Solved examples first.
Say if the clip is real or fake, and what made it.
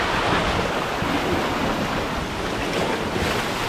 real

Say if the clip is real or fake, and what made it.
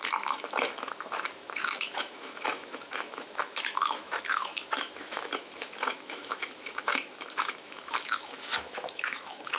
fake, autoencoder, DAC-VAE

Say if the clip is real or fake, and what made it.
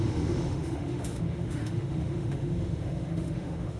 fake, autoencoder, DAC-VAE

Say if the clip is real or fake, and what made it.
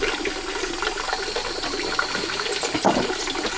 real